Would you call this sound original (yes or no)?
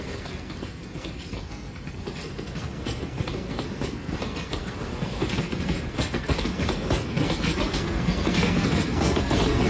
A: no